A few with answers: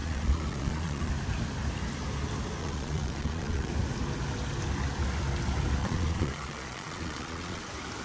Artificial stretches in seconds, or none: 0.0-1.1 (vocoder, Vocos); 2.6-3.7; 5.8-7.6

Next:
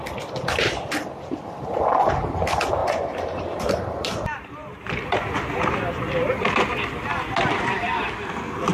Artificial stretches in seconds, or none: 2.8-6.1 (vocoder, BigVGAN v2)